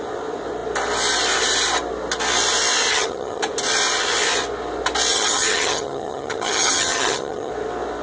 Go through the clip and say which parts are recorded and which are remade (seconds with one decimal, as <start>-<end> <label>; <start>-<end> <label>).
0.0-2.9 recorded; 2.9-3.4 remade; 3.4-5.1 recorded; 5.1-7.5 remade; 7.5-8.0 recorded

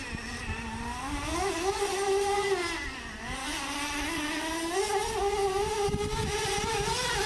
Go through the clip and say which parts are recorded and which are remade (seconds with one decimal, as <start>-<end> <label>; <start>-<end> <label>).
0.0-7.3 recorded